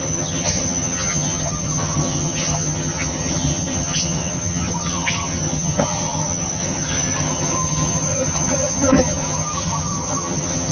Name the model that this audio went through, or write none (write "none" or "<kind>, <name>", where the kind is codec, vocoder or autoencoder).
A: vocoder, HiFi-GAN